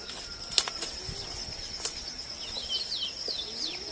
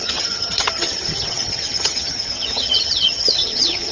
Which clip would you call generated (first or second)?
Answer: second